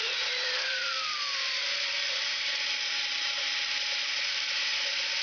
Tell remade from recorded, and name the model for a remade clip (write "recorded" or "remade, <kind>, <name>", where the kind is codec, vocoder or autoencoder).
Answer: remade, vocoder, BigVGAN v2